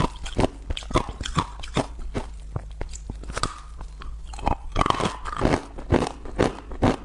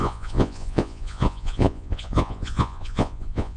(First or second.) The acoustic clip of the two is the first